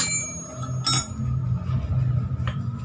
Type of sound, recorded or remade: recorded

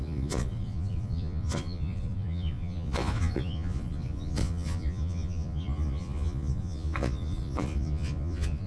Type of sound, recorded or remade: remade